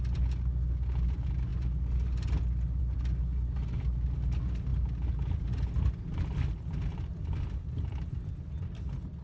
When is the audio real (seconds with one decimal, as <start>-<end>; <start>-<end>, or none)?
0.0-9.2